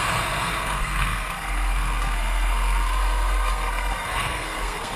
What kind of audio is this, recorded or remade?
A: remade